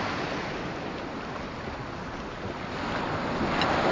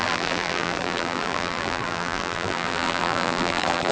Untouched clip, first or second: first